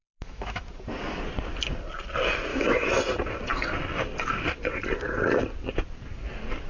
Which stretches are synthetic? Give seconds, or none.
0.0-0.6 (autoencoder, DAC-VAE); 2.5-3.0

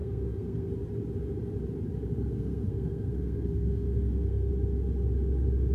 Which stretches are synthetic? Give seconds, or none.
0.0-0.7 (codec, SNAC); 2.1-4.5

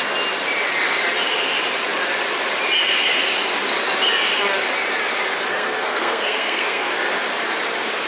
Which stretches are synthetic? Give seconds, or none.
5.5-6.9 (codec, SNAC)